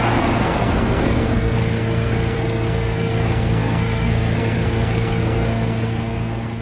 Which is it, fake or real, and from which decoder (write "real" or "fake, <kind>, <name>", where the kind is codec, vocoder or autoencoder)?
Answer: fake, codec, SNAC